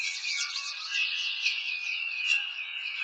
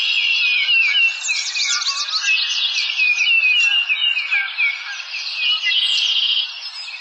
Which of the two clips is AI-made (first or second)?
first